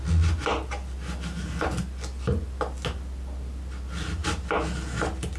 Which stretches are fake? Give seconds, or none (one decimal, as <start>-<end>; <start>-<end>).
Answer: none